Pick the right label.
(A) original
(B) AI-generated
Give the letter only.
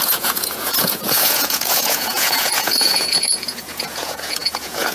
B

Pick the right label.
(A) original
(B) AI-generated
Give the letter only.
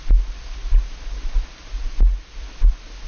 A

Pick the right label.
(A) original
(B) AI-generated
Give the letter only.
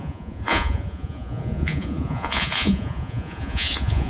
B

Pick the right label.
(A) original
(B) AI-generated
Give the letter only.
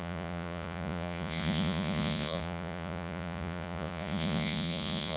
B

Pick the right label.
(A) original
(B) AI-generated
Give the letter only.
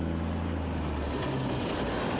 A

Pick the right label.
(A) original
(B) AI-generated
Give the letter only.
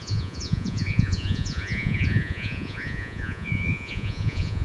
B